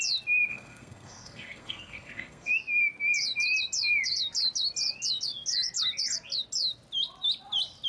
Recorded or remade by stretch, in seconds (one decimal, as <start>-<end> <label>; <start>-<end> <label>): 0.0-0.5 recorded; 0.5-2.5 remade; 2.5-7.9 recorded